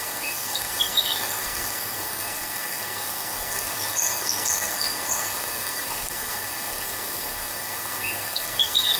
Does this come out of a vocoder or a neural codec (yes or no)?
yes